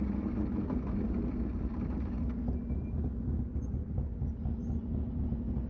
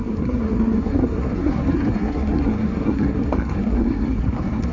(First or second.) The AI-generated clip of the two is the second